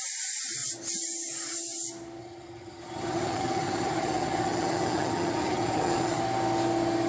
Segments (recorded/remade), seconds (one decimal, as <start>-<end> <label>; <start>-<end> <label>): 0.0-2.2 recorded; 2.2-6.2 remade; 6.2-7.1 recorded